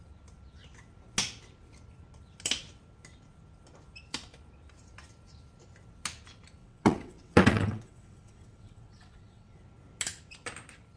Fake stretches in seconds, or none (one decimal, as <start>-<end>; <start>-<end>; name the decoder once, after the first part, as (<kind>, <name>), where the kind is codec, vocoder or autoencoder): 6.6-9.6 (vocoder, WaveNeXt)